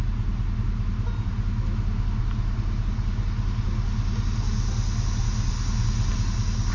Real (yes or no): yes